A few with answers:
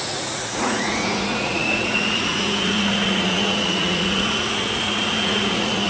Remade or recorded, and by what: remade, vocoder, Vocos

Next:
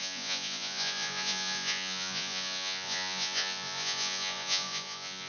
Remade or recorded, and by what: remade, vocoder, Vocos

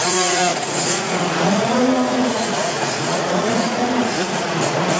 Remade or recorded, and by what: remade, vocoder, Vocos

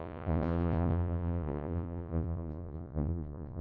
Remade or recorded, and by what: remade, vocoder, Vocos